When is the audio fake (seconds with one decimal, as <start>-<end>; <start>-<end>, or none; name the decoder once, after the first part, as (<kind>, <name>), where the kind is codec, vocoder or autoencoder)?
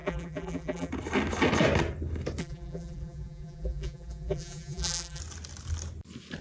0.0-0.9 (vocoder, BigVGAN v2); 2.4-5.2